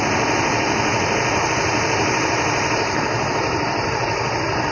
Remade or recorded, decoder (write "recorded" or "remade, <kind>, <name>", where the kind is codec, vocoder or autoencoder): recorded